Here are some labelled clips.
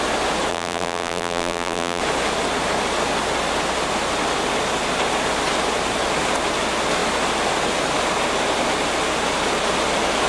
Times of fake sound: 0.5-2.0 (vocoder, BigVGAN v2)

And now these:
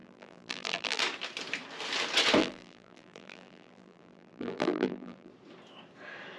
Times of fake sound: 0.0-1.0 (vocoder, BigVGAN v2); 2.4-5.3